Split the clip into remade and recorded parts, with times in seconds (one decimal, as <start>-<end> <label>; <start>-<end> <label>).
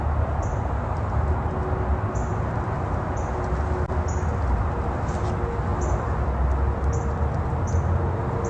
0.0-2.3 recorded; 2.3-3.4 remade; 3.4-8.5 recorded